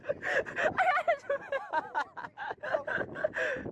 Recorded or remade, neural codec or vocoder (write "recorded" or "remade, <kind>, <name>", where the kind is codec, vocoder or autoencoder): recorded